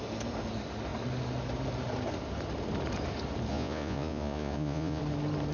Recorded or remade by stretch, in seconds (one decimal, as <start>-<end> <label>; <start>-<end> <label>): 0.0-3.5 recorded; 3.5-5.0 remade; 5.0-5.5 recorded